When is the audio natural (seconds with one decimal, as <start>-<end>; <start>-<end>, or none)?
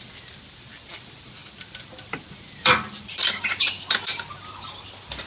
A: none